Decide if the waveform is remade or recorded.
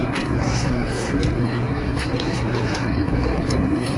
remade